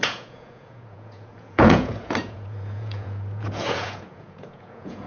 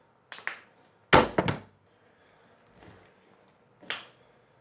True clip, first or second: second